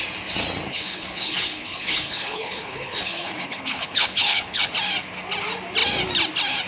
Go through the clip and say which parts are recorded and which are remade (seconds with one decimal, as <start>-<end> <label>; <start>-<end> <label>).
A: 0.0-0.7 recorded; 0.7-4.7 remade; 4.7-6.7 recorded